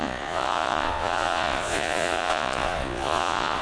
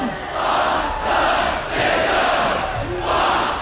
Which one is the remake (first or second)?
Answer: first